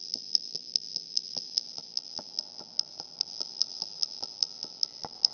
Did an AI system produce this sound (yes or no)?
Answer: yes